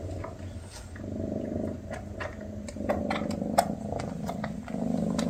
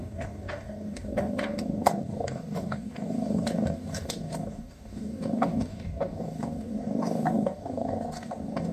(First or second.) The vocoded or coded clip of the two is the second